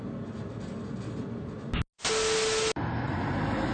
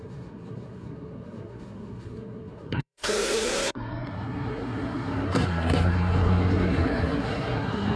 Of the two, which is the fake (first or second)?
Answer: second